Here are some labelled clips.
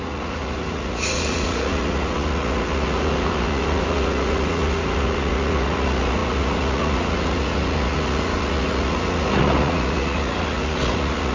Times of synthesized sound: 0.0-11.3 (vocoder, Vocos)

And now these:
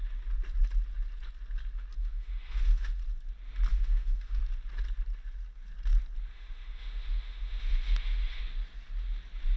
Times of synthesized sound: 2.0-2.9 (autoencoder, DAC-VAE); 3.7-4.4; 6.3-8.4